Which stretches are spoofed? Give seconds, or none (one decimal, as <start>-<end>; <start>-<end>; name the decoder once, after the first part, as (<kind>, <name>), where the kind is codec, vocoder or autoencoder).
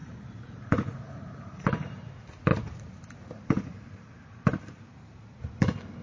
0.0-2.1 (vocoder, BigVGAN v2); 2.5-5.4